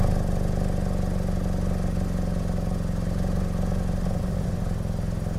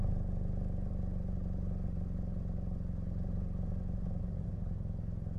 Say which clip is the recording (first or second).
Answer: first